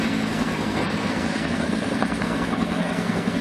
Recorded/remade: remade